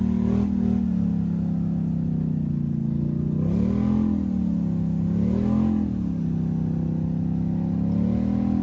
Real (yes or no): yes